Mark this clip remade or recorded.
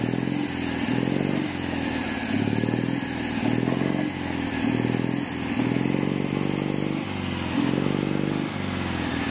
recorded